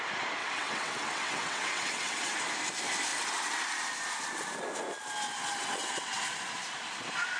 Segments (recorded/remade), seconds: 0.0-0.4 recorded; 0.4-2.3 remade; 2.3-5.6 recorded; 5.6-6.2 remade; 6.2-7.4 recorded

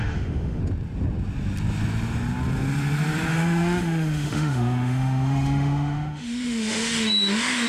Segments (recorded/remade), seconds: 0.0-0.6 remade; 0.6-3.3 recorded; 3.3-7.7 remade

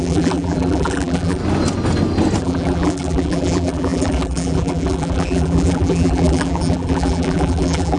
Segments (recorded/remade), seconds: 0.0-1.4 remade; 1.4-2.4 recorded; 2.4-8.0 remade

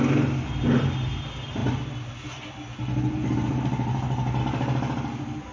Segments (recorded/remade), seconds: 0.0-5.5 recorded

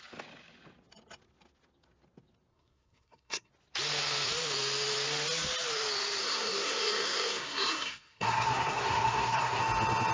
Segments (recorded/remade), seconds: 0.0-2.5 recorded; 2.5-3.5 remade; 3.5-6.2 recorded; 6.2-9.6 remade; 9.6-10.1 recorded

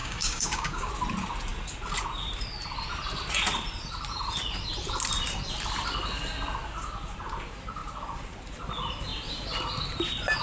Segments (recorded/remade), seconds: 0.0-0.9 remade; 0.9-10.4 recorded